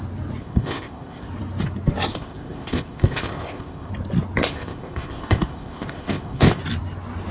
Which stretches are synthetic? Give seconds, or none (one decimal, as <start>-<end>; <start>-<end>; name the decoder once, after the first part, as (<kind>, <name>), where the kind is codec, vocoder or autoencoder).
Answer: 0.4-1.3 (codec, ZipCodec); 2.1-3.9; 4.4-6.6